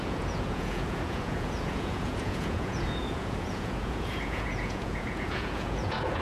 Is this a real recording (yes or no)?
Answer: no